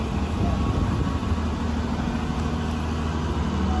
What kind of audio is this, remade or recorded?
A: recorded